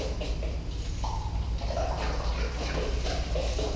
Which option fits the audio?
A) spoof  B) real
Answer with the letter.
B